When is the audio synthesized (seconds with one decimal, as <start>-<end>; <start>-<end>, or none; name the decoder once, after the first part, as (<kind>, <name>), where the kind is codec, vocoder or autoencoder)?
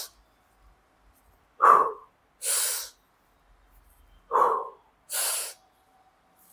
none